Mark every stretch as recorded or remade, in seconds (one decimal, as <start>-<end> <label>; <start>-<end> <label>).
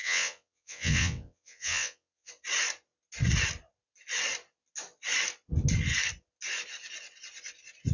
0.0-2.3 remade; 2.3-7.9 recorded